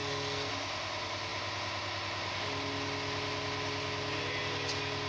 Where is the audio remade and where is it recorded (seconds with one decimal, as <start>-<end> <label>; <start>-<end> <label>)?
0.0-0.5 remade; 0.5-5.1 recorded